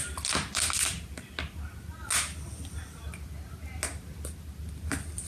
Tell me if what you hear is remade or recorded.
recorded